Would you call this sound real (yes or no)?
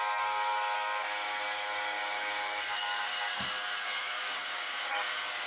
no